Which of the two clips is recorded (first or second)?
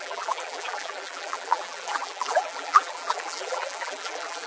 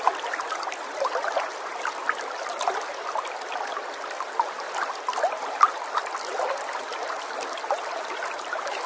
second